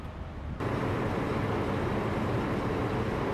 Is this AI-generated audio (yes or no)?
no